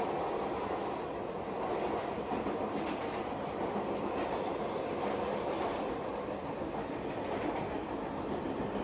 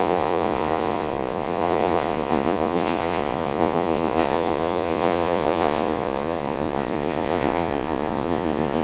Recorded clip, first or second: first